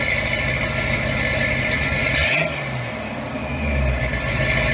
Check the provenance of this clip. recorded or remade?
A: recorded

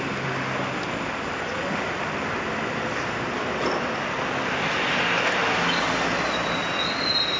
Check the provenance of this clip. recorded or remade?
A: recorded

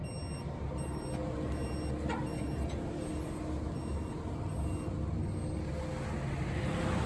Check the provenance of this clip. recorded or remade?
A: recorded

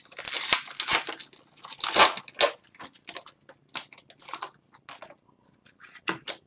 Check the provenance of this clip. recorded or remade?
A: recorded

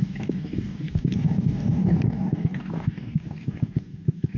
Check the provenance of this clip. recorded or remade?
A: remade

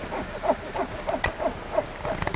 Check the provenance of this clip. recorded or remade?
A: recorded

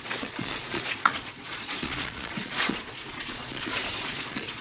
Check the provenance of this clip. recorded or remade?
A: remade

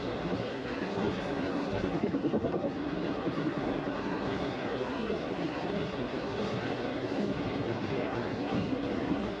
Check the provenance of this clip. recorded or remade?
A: remade